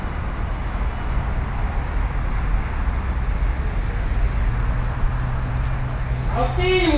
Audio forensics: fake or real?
real